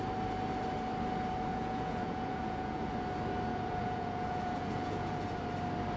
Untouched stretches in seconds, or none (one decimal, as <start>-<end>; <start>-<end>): 0.0-1.5; 2.9-3.5; 5.4-6.0